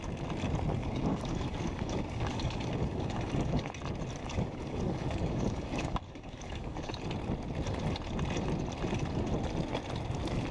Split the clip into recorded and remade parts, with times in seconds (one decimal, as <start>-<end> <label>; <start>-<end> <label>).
0.0-0.8 recorded; 0.8-3.7 remade; 3.7-4.2 recorded; 4.2-7.0 remade; 7.0-10.5 recorded